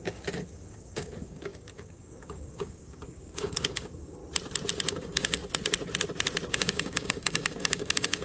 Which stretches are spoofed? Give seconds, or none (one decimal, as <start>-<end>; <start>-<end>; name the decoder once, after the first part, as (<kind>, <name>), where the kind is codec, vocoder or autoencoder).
0.0-4.2 (codec, DAC); 4.9-5.4; 6.5-8.2